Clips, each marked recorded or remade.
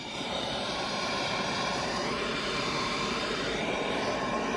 remade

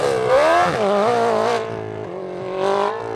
recorded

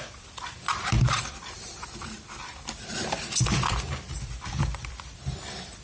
remade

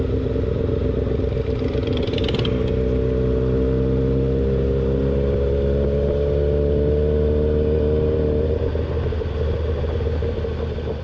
remade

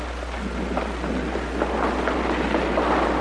recorded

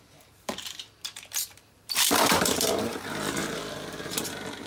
remade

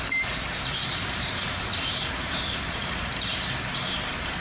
remade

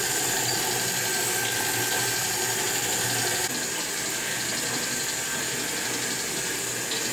recorded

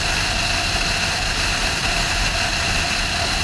recorded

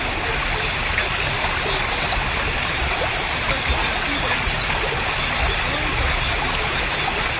recorded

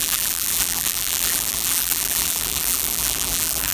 remade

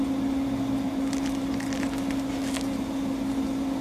recorded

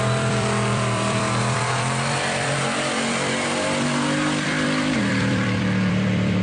remade